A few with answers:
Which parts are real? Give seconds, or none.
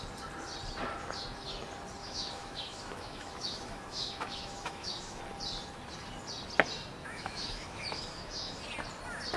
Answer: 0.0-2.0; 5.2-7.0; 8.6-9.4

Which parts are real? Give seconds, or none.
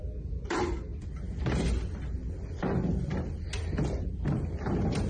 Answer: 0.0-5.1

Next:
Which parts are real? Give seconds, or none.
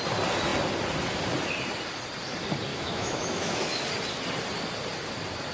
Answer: 0.0-2.7; 3.8-5.5